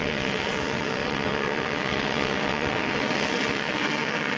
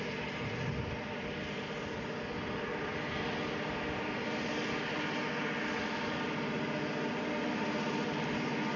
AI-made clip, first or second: first